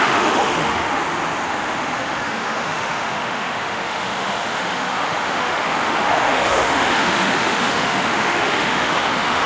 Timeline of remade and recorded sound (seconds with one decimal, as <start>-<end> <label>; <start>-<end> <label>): 0.0-1.0 remade; 1.0-1.5 recorded; 1.5-9.5 remade